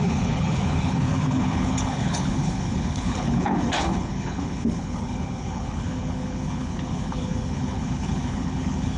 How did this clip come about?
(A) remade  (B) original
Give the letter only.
A